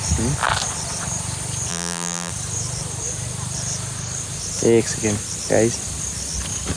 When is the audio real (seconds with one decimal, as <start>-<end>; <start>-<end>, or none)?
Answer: 0.0-1.7; 2.3-6.8